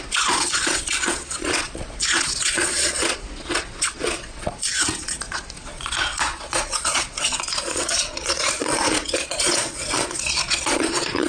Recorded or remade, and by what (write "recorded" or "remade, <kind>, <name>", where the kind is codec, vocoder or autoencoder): remade, vocoder, Vocos